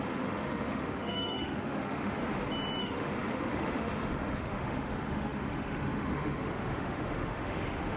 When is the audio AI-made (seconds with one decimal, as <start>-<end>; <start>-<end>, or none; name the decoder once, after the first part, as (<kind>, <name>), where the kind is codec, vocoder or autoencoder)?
0.0-2.2 (autoencoder, DAC-VAE); 2.8-8.0